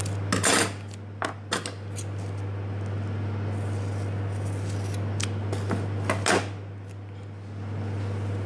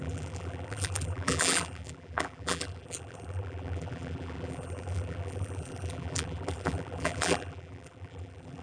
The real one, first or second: first